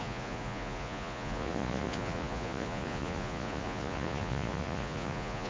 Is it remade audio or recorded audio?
remade